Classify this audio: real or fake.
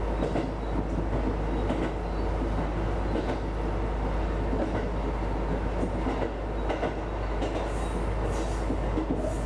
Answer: real